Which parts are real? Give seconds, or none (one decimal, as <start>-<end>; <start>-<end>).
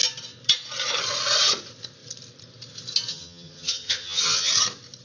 0.0-3.1; 4.5-5.0